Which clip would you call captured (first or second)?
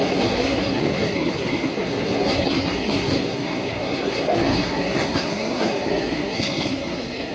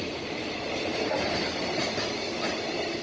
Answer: second